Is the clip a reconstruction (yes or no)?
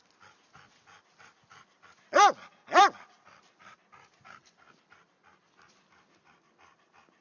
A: no